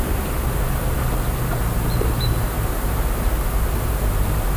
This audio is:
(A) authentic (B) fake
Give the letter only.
B